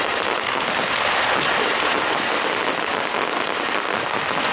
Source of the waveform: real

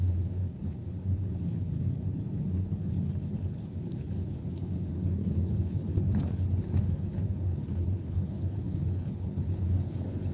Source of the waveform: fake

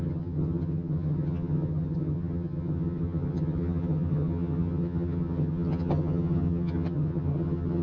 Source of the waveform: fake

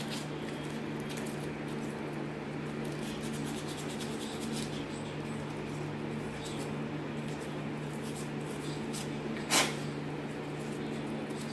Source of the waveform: real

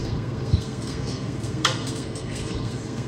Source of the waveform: fake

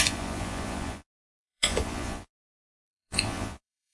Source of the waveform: fake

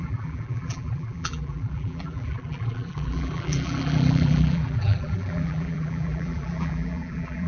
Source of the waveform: fake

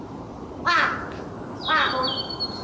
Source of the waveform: fake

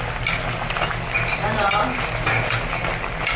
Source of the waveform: real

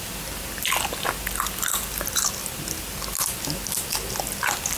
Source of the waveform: real